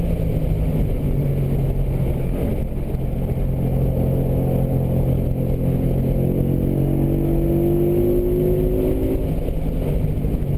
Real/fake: real